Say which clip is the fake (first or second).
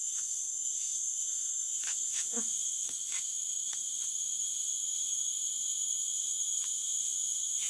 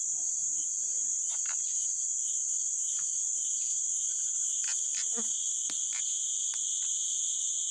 first